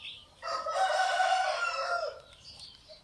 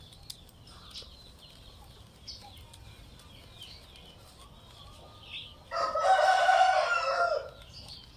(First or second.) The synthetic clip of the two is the first